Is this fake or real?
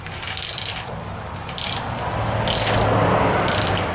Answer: real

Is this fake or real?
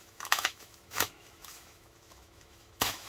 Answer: fake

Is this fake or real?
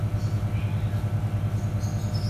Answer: real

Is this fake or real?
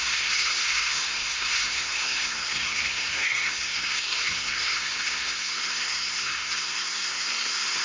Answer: fake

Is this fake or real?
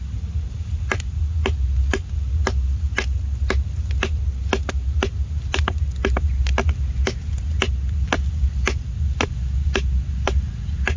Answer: real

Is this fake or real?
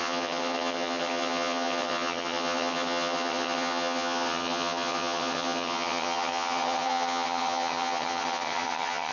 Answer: fake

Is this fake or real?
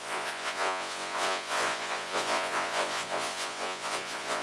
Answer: fake